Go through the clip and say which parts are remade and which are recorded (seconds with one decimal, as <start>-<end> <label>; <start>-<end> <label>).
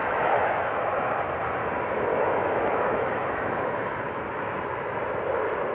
0.0-0.8 remade; 0.8-2.1 recorded; 2.1-4.2 remade; 4.2-5.7 recorded